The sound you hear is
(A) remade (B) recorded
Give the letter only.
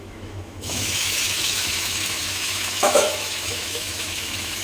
A